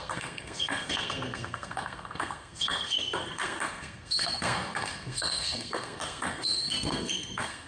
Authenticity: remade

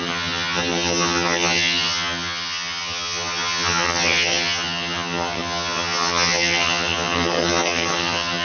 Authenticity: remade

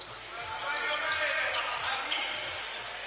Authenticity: recorded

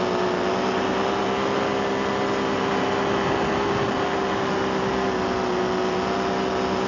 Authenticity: recorded